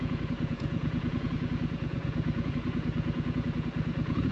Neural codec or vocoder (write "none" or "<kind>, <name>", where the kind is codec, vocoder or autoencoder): vocoder, Vocos